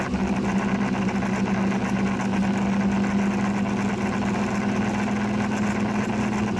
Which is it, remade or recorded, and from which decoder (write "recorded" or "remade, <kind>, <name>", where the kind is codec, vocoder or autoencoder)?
recorded